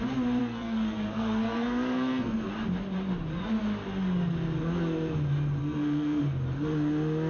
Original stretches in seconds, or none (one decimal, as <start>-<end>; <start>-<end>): 0.0-0.4; 2.5-5.6; 6.2-7.3